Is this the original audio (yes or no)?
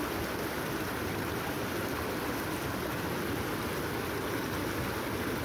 yes